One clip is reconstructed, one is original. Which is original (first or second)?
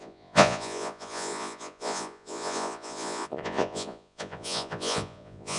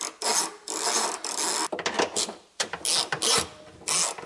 second